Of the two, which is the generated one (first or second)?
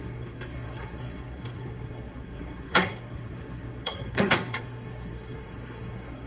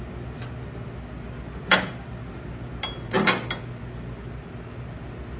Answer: first